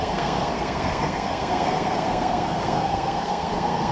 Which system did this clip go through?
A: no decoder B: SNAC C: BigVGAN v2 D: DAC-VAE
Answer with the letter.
B